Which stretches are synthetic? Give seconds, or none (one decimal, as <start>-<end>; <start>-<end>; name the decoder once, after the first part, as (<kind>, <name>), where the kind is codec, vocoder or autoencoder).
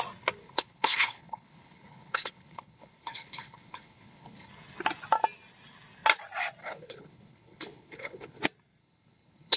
0.4-4.5 (codec, HILCodec); 6.6-8.4; 8.8-9.6